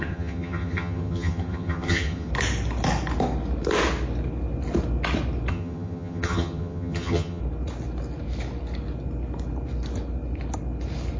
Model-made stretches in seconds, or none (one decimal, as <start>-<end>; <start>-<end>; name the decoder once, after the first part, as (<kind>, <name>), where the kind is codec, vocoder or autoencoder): 0.0-2.3 (vocoder, HiFi-GAN); 5.5-7.4